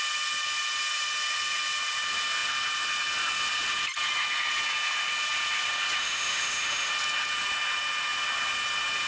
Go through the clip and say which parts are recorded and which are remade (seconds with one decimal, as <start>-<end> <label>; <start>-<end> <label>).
0.0-6.0 recorded; 6.0-6.9 remade; 6.9-9.1 recorded